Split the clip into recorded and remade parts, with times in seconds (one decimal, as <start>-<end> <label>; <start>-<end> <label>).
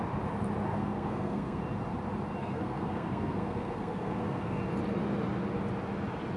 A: 0.0-0.7 recorded; 0.7-1.6 remade; 1.6-2.4 recorded; 2.4-4.6 remade; 4.6-6.4 recorded